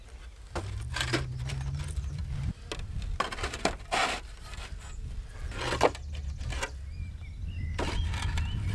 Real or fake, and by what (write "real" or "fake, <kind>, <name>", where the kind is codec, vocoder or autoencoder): real